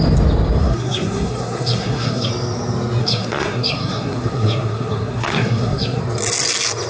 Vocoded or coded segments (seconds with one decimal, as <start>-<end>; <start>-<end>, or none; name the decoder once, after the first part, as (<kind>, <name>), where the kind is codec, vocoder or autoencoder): 0.6-2.3 (codec, SNAC); 3.0-6.0